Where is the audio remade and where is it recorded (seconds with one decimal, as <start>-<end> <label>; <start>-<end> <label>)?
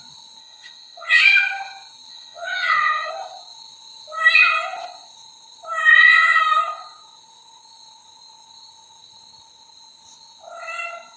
0.0-0.4 recorded; 0.4-1.2 remade; 1.2-2.1 recorded; 2.1-3.1 remade; 3.1-5.9 recorded; 5.9-6.4 remade; 6.4-11.2 recorded